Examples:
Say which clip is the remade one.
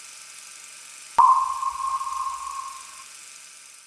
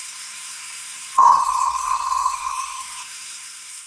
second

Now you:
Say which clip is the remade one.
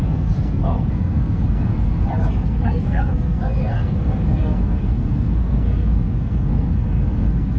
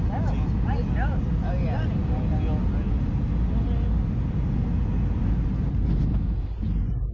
first